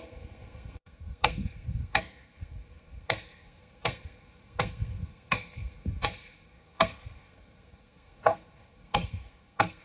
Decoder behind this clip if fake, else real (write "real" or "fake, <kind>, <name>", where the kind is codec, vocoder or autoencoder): fake, codec, SNAC